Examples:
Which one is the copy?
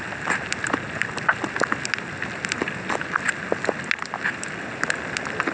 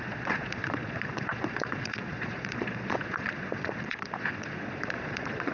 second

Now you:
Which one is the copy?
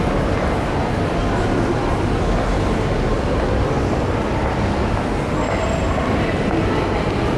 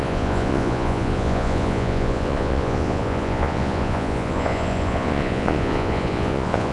second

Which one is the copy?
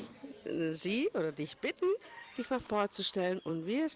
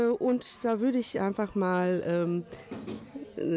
first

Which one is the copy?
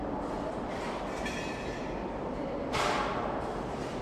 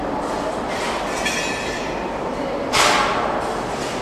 first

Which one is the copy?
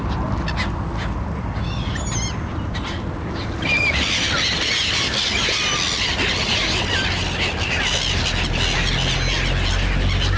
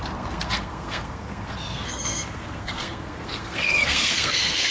second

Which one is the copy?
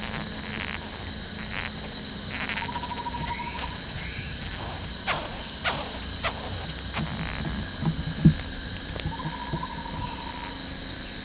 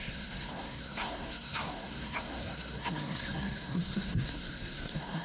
second